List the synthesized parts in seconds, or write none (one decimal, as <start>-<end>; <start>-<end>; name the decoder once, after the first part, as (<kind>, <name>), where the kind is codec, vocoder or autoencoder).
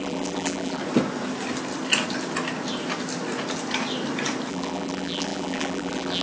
0.0-0.8 (vocoder, BigVGAN v2); 4.5-6.2